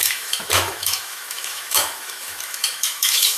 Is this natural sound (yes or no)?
no